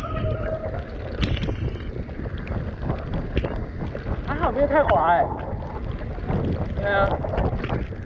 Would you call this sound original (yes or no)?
yes